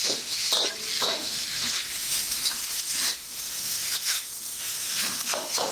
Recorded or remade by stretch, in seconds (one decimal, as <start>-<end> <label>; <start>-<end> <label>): 0.0-0.5 remade; 0.5-1.0 recorded; 1.0-5.7 remade